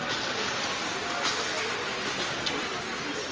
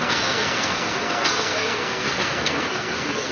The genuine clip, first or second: first